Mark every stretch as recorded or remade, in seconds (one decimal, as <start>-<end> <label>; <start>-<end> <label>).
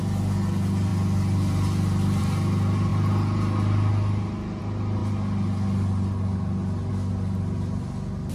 0.0-8.3 recorded